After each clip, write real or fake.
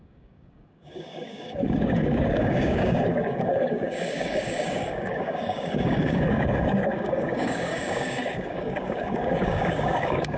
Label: fake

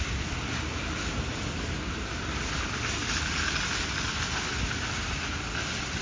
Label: real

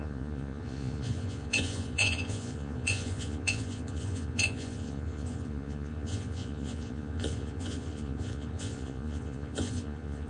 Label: fake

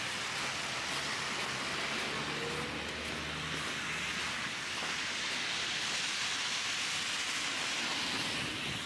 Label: real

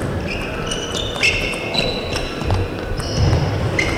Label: real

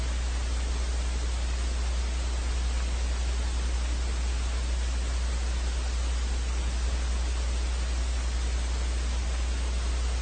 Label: real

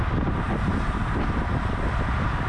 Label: fake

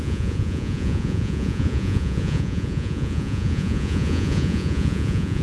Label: fake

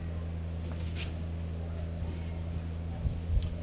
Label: real